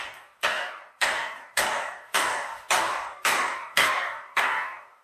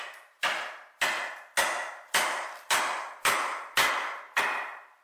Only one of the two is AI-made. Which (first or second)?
first